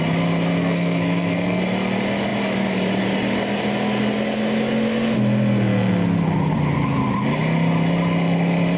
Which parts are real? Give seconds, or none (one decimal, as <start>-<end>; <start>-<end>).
0.0-0.6; 1.6-8.8